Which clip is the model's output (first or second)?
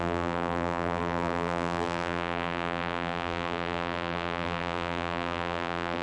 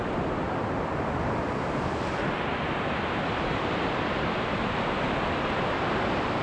first